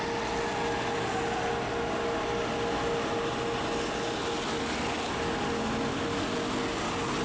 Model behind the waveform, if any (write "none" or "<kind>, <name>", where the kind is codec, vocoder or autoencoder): none